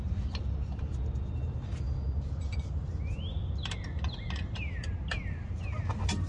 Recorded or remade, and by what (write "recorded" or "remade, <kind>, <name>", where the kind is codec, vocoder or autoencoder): recorded